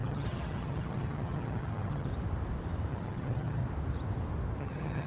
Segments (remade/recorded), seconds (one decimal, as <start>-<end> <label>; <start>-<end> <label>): 0.0-2.1 remade; 2.1-2.9 recorded; 2.9-3.6 remade; 3.6-4.6 recorded; 4.6-5.1 remade